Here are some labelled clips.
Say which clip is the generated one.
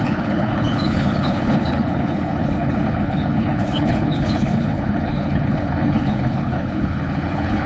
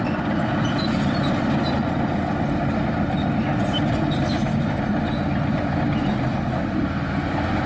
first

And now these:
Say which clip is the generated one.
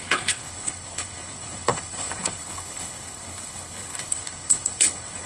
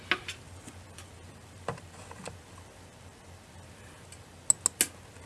first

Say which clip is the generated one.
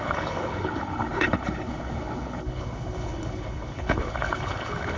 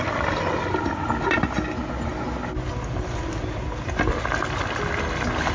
first